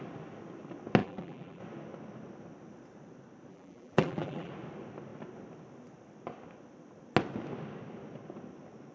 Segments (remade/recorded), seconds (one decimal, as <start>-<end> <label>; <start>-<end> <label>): 0.0-1.0 recorded; 1.0-1.6 remade; 1.6-3.5 recorded; 3.5-4.5 remade; 4.5-8.9 recorded

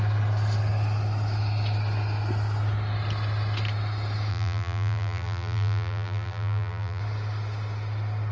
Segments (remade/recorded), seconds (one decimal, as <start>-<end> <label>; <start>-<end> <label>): 0.0-4.3 recorded; 4.3-7.0 remade; 7.0-8.3 recorded

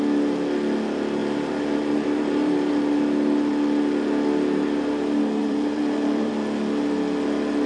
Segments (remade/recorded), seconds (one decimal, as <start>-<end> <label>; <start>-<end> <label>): 0.0-1.2 recorded; 1.2-2.7 remade; 2.7-5.4 recorded; 5.4-6.3 remade; 6.3-7.7 recorded

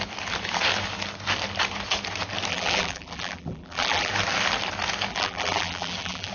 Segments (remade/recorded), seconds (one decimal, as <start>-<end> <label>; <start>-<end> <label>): 0.0-2.5 recorded; 2.5-4.1 remade; 4.1-5.1 recorded; 5.1-6.3 remade

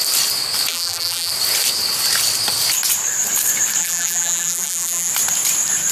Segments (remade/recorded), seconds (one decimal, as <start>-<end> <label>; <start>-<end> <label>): 0.0-0.7 recorded; 0.7-1.3 remade; 1.3-3.8 recorded; 3.8-5.1 remade; 5.1-5.9 recorded

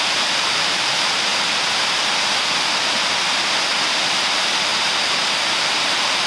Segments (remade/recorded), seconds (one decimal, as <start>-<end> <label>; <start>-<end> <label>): 0.0-1.3 remade; 1.3-3.8 recorded; 3.8-4.7 remade; 4.7-5.3 recorded; 5.3-6.3 remade

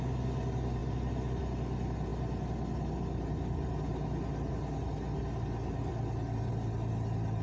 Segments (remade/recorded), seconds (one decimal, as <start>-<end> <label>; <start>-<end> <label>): 0.0-7.4 recorded

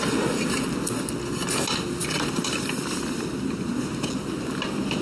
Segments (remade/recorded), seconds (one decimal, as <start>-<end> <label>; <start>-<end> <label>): 0.0-2.0 recorded; 2.0-4.1 remade; 4.1-5.0 recorded